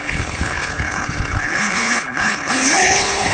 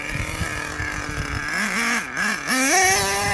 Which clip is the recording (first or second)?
second